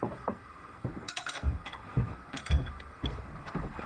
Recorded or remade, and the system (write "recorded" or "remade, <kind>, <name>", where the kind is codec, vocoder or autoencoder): remade, codec, SNAC